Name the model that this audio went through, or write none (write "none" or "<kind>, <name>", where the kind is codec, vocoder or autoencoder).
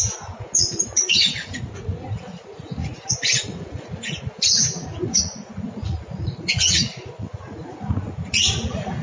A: vocoder, Vocos